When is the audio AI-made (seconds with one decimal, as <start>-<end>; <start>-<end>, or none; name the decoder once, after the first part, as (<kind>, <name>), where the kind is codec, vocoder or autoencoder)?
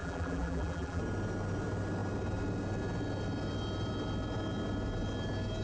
0.0-1.0 (vocoder, BigVGAN v2)